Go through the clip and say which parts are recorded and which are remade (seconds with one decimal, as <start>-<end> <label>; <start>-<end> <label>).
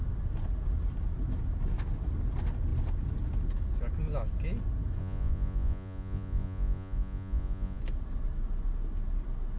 0.0-5.0 recorded; 5.0-7.8 remade; 7.8-9.6 recorded